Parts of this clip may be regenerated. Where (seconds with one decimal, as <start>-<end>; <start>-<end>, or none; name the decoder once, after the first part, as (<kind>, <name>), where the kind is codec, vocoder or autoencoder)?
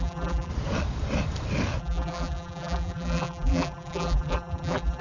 0.0-0.5 (vocoder, BigVGAN v2); 1.8-5.0